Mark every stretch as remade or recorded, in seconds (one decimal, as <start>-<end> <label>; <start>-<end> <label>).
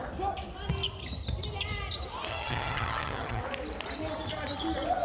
0.0-2.3 recorded; 2.3-3.4 remade; 3.4-5.0 recorded